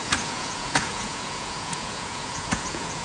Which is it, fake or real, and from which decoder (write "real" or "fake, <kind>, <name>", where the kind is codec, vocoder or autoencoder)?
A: fake, vocoder, Vocos